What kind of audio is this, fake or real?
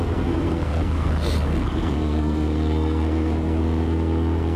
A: fake